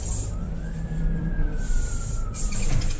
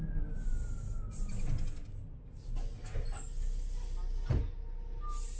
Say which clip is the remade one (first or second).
first